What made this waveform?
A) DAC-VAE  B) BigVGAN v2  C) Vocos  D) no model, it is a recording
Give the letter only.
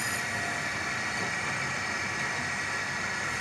D